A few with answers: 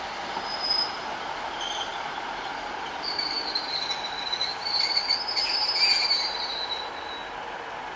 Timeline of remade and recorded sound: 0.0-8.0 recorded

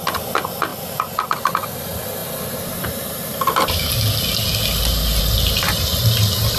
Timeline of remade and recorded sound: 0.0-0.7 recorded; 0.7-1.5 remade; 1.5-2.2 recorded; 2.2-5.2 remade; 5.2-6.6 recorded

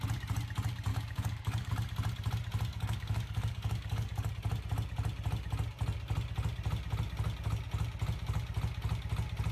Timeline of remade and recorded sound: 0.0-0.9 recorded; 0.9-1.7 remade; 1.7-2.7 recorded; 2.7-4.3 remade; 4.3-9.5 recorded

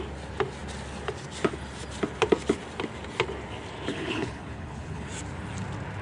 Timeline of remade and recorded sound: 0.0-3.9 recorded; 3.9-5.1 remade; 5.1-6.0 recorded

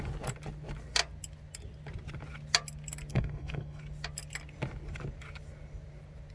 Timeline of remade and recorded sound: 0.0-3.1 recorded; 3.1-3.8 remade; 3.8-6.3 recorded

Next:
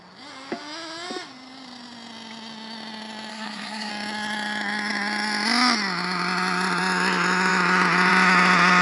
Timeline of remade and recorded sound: 0.0-3.3 recorded; 3.3-3.9 remade; 3.9-8.8 recorded